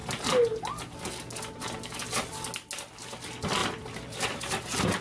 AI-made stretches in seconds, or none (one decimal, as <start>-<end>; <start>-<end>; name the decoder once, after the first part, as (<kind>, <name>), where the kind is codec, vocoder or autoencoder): 3.6-5.0 (vocoder, BigVGAN v2)